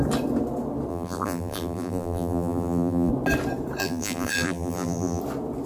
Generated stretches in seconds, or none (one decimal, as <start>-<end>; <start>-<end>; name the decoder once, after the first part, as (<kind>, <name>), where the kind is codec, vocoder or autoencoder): 0.9-3.1 (vocoder, BigVGAN v2); 3.8-5.2